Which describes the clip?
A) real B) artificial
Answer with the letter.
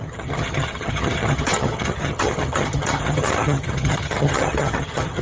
B